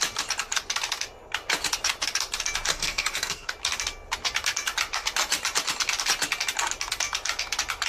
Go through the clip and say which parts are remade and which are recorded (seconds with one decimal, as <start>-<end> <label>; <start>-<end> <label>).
0.0-2.7 recorded; 2.7-3.5 remade; 3.5-7.9 recorded